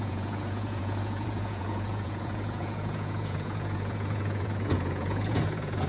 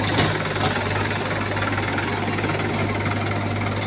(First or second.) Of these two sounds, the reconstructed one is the first